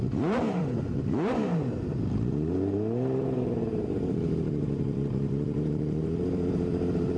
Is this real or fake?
fake